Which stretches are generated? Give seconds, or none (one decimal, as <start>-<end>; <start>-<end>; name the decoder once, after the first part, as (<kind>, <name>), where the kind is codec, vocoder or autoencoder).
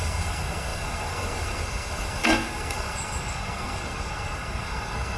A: 0.0-5.2 (codec, SNAC)